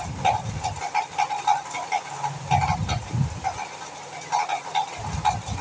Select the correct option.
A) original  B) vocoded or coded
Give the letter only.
A